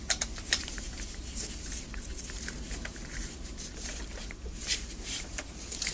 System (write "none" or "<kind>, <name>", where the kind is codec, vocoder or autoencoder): vocoder, BigVGAN v2